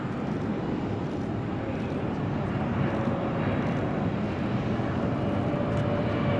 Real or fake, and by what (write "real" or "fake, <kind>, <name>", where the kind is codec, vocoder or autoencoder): real